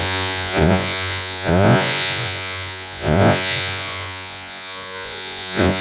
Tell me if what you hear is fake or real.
fake